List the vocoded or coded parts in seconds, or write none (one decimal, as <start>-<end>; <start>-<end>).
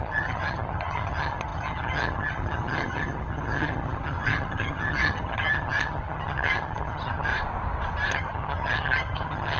0.0-7.3; 8.1-9.6